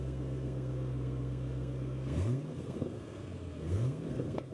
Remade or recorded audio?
remade